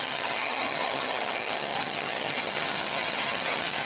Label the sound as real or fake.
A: fake